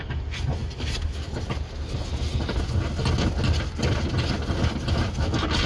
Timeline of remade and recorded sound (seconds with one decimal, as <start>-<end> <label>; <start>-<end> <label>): 0.0-5.7 recorded

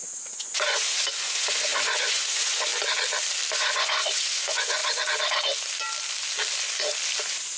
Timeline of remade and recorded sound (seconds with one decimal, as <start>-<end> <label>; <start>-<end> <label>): 0.0-2.7 remade; 2.7-3.5 recorded; 3.5-4.8 remade; 4.8-7.6 recorded

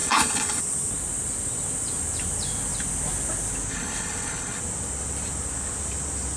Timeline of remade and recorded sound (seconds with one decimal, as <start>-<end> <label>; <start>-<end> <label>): 0.0-0.6 remade; 0.6-3.7 recorded; 3.7-4.6 remade; 4.6-6.4 recorded

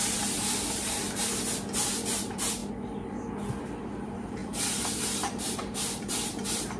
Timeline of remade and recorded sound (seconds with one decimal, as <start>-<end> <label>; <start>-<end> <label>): 0.0-2.6 remade; 2.6-3.8 recorded; 3.8-6.8 remade

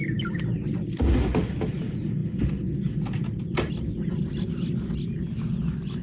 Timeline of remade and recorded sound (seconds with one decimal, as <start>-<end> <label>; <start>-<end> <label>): 0.0-6.0 recorded

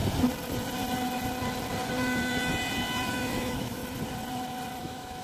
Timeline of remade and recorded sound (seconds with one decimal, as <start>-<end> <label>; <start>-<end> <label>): 0.0-3.1 recorded; 3.1-3.8 remade; 3.8-4.8 recorded; 4.8-5.2 remade